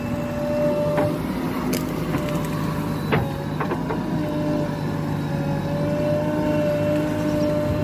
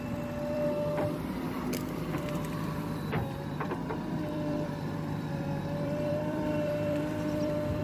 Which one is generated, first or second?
second